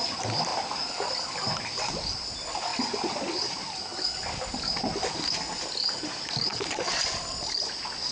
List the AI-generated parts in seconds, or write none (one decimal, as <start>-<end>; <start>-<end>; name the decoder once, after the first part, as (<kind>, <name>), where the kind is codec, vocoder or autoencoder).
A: 6.5-7.0 (codec, DAC)